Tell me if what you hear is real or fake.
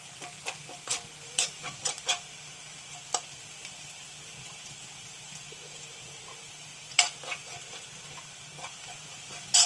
fake